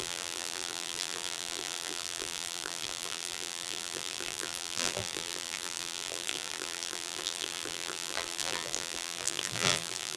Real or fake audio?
fake